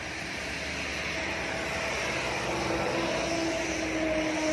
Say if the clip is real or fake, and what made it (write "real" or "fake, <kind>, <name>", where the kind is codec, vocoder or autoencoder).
real